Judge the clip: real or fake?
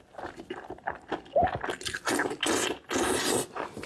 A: real